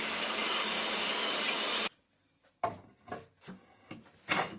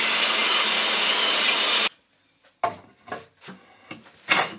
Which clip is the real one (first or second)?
second